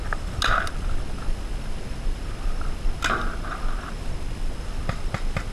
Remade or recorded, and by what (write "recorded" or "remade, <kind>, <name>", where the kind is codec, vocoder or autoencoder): recorded